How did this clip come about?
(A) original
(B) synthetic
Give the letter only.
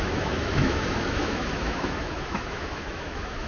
B